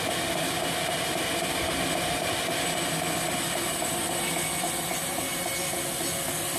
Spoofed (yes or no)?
no